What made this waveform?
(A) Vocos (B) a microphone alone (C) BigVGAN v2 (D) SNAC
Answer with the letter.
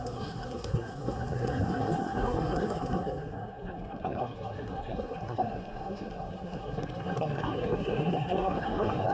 D